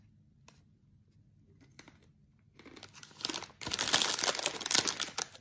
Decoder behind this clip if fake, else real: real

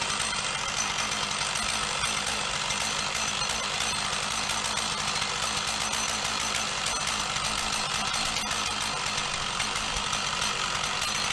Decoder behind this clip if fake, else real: real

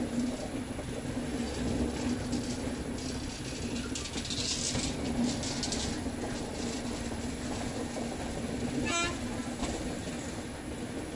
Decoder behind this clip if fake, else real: real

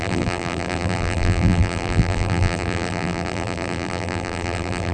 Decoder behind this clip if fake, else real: fake, vocoder, BigVGAN v2